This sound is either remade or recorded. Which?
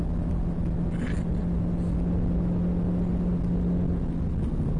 recorded